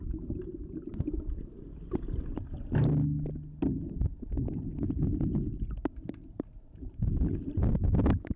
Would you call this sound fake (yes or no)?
no